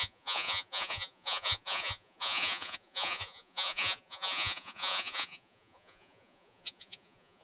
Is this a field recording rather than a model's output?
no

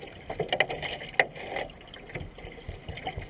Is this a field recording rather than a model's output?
yes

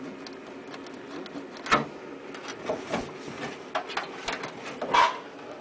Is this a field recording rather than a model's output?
yes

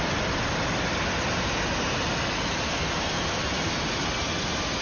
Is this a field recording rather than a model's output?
yes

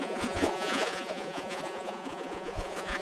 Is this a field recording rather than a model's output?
no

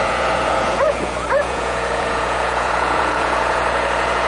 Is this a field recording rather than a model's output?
no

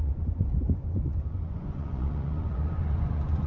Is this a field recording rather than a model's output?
no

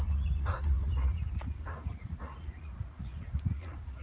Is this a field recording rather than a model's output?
no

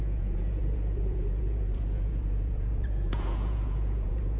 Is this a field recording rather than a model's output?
no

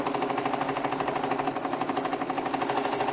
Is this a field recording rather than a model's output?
yes